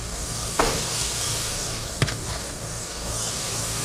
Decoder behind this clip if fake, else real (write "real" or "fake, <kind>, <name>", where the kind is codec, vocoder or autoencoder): fake, codec, DAC